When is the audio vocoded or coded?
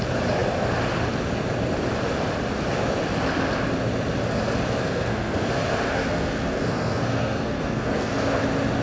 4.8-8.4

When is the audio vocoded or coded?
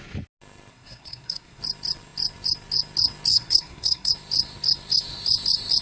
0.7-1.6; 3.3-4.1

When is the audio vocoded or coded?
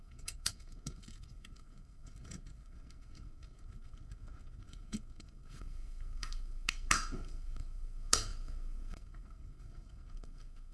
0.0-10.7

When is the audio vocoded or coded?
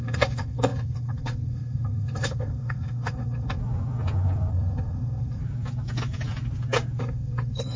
0.0-3.6; 4.5-5.4; 7.0-7.8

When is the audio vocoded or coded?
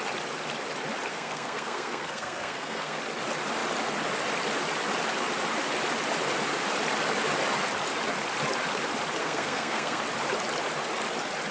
1.1-3.0; 9.2-10.0